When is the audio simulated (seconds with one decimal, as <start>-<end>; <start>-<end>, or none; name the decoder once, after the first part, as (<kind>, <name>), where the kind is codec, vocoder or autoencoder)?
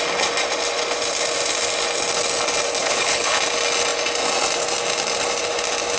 2.8-3.4 (codec, HILCodec)